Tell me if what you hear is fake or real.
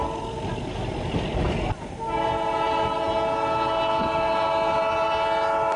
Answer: real